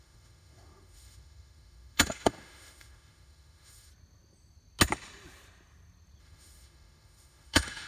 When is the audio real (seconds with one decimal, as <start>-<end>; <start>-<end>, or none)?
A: 3.9-6.2